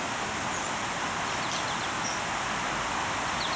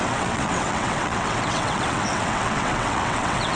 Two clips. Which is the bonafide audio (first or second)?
first